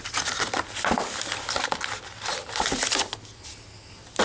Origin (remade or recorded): recorded